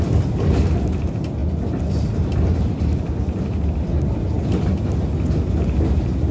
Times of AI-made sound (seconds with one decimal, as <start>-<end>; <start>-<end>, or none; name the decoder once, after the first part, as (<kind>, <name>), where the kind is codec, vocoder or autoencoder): none